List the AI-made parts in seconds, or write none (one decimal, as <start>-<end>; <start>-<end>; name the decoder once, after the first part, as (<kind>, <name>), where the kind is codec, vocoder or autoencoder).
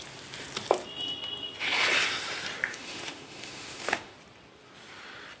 2.7-4.1 (autoencoder, DAC-VAE)